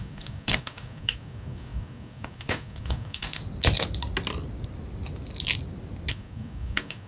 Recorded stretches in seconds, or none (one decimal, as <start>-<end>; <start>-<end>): 3.4-6.1